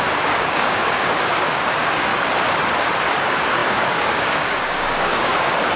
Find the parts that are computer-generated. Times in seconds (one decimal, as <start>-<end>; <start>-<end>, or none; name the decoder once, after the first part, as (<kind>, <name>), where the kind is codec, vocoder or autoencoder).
0.0-2.1 (codec, DAC); 3.2-5.8